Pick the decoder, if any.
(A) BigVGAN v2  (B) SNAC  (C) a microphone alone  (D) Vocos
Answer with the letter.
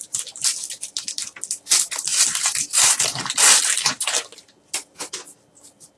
C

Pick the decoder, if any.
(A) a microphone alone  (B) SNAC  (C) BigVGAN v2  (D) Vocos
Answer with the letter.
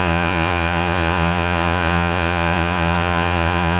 D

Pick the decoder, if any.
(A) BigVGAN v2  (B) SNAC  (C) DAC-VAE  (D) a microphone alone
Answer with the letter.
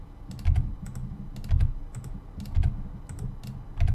D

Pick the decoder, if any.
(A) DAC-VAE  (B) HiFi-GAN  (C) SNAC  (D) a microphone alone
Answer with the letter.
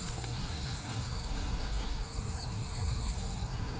C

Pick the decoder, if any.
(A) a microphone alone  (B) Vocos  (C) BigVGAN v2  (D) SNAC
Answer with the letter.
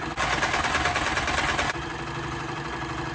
A